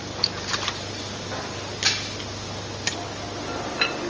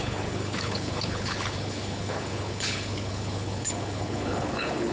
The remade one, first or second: second